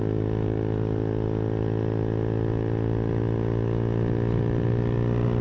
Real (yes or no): yes